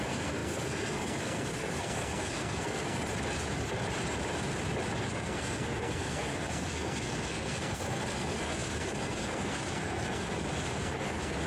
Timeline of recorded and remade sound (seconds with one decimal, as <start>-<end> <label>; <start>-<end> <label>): 0.0-3.0 remade; 3.0-5.0 recorded; 5.0-11.5 remade